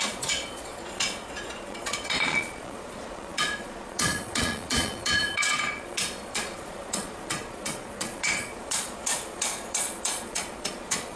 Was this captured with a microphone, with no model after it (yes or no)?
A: no